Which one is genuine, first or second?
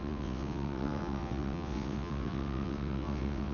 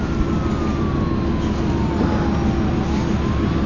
second